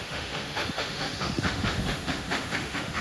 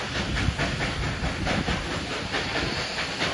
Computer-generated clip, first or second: first